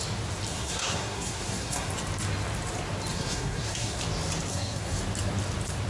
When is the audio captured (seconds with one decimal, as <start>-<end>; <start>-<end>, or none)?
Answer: 0.0-0.5; 1.9-3.1; 4.0-4.5; 5.0-5.9